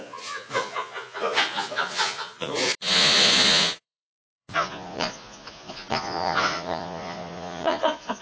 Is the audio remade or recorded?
remade